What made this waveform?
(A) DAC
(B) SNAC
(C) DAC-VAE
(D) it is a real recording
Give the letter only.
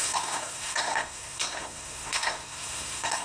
B